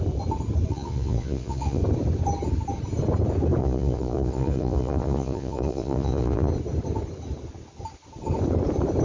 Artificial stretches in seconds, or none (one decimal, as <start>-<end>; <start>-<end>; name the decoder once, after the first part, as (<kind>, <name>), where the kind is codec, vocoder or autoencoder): 0.7-1.8 (vocoder, Vocos); 3.6-6.5